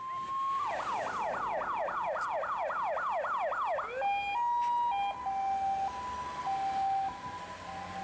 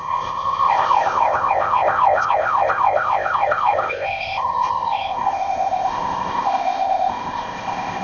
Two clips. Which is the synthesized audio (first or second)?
second